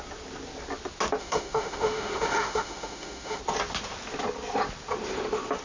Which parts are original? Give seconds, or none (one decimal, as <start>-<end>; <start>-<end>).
0.0-1.2; 3.4-5.6